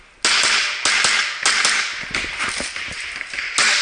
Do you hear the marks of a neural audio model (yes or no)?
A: no